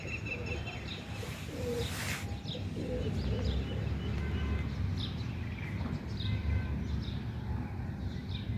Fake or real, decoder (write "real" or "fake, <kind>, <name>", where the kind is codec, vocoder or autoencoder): real